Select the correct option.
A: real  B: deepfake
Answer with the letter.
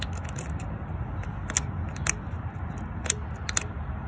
A